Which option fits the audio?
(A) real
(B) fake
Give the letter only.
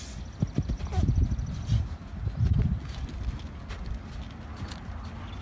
A